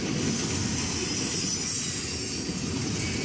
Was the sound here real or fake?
real